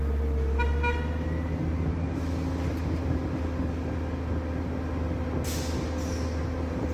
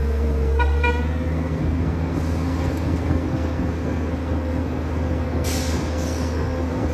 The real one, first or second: first